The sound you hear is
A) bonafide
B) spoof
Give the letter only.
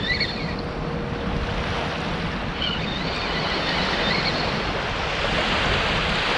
A